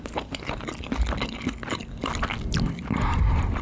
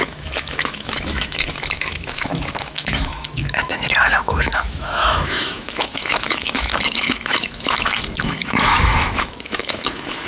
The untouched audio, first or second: first